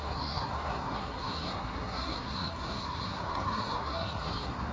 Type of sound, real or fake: fake